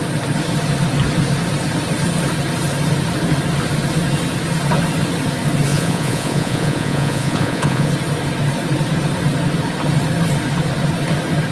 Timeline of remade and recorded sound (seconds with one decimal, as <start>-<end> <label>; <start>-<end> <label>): 0.0-5.7 recorded; 5.7-7.9 remade; 7.9-11.5 recorded